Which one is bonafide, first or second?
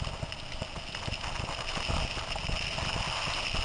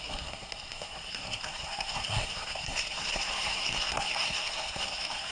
first